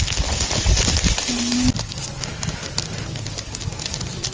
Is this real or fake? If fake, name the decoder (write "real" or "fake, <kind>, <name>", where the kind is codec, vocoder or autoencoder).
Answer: real